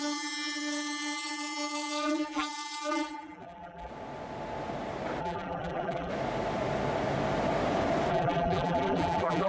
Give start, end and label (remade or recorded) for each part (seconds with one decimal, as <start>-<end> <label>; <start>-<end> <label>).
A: 0.0-3.9 remade; 3.9-5.2 recorded; 5.2-6.1 remade; 6.1-8.1 recorded; 8.1-9.5 remade